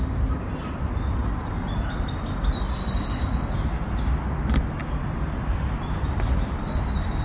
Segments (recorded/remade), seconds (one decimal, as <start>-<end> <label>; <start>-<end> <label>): 0.0-7.2 recorded